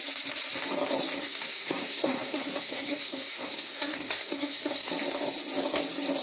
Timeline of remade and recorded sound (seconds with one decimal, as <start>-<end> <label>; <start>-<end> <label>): 0.0-1.2 recorded; 1.2-4.9 remade; 4.9-6.2 recorded